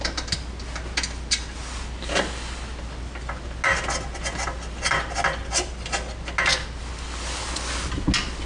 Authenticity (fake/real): real